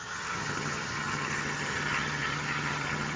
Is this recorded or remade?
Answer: remade